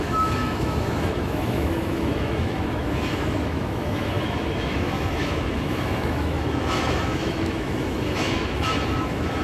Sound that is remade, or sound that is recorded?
remade